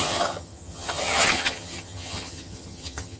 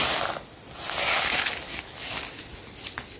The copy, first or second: first